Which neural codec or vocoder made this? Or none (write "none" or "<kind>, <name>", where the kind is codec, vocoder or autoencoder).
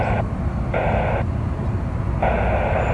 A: none